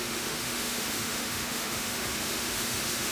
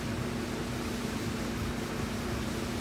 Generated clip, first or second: first